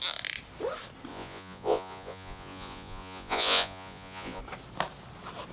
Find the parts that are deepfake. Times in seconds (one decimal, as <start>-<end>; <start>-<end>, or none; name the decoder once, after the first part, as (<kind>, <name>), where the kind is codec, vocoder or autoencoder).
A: 1.1-4.4 (vocoder, Vocos)